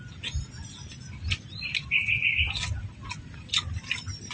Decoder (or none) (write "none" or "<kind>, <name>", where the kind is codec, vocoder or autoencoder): none